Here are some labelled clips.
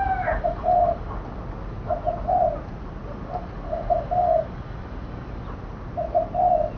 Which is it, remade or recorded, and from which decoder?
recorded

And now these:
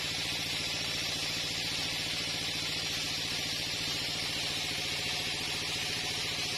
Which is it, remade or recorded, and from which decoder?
remade, vocoder, BigVGAN v2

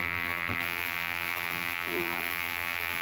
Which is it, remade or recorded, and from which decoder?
remade, vocoder, BigVGAN v2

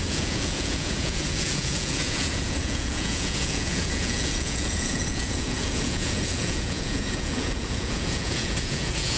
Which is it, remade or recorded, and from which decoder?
remade, vocoder, Vocos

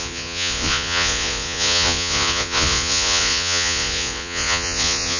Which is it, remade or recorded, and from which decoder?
remade, vocoder, Vocos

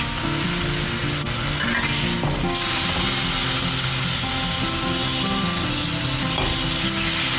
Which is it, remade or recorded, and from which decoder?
recorded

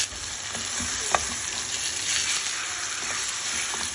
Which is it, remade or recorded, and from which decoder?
recorded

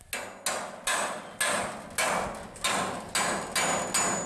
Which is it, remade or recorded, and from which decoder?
recorded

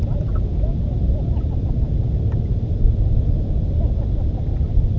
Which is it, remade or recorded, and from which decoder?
recorded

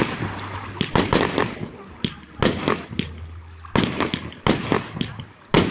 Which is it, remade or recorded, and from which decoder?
recorded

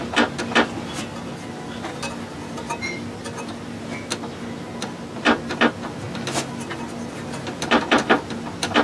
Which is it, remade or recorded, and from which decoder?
recorded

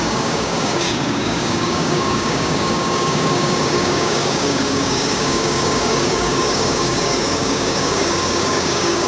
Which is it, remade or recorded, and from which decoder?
remade, codec, DAC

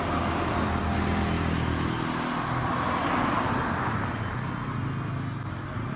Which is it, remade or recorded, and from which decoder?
recorded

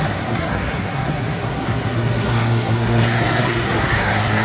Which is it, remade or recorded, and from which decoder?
remade, codec, SNAC